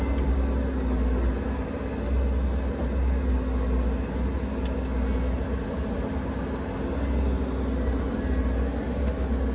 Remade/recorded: recorded